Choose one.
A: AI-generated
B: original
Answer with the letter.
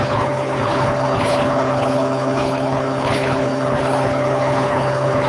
A